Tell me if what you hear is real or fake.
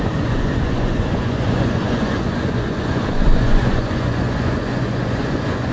fake